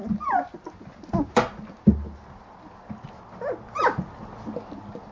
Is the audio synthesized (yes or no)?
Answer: no